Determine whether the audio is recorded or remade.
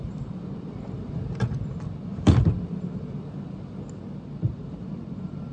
remade